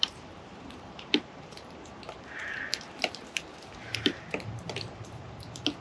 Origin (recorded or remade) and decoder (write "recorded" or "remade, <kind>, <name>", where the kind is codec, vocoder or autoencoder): remade, vocoder, BigVGAN v2